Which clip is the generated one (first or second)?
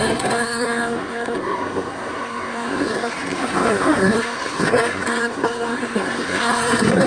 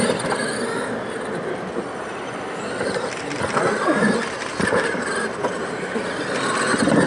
first